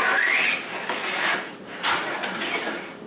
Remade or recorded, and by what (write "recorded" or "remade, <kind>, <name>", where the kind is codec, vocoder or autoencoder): recorded